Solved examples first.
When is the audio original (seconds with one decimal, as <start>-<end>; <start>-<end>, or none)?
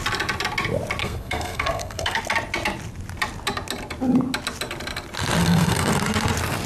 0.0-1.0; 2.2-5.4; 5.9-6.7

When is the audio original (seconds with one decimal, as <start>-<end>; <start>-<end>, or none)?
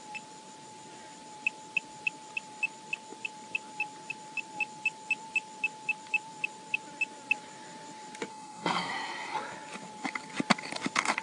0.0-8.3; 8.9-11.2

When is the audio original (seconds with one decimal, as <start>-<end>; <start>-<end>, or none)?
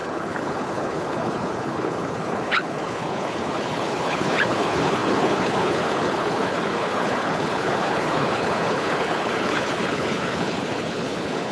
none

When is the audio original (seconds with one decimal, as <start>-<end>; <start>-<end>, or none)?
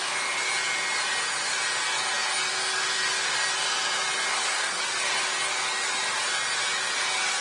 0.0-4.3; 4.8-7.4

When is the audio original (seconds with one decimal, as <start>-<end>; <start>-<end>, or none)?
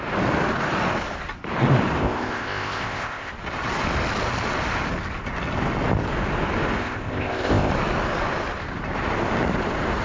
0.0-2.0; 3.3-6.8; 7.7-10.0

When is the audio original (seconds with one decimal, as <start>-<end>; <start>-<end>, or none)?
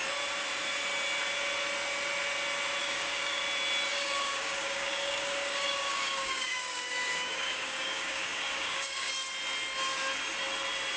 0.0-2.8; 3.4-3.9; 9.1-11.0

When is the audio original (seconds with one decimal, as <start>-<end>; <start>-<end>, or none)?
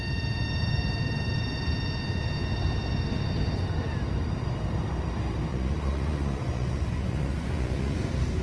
0.0-5.5; 8.0-8.4